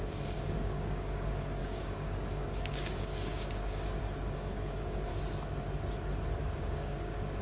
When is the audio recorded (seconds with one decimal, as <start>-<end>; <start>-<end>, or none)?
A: 5.1-6.4